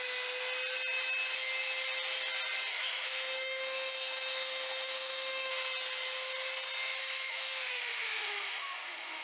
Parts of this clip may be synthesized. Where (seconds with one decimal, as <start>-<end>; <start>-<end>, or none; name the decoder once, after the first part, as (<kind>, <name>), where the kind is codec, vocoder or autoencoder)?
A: 2.7-5.5 (autoencoder, DAC-VAE); 7.0-9.2